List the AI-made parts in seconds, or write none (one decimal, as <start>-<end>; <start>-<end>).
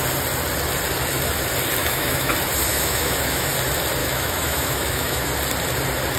1.8-2.3; 2.7-3.5; 4.0-5.3